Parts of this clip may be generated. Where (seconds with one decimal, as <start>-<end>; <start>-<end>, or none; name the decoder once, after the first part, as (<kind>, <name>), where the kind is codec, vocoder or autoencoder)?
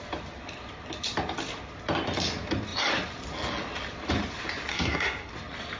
4.7-5.3 (codec, SNAC)